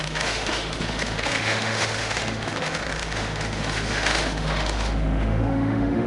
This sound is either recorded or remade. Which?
remade